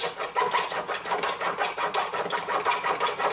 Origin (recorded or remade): recorded